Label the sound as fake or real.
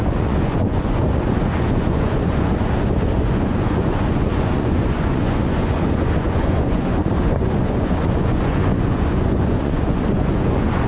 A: fake